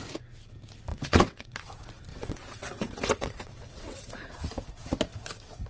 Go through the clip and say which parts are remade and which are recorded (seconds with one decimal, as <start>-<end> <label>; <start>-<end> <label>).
0.0-0.9 recorded; 0.9-1.7 remade; 1.7-2.1 recorded; 2.1-4.5 remade; 4.5-5.7 recorded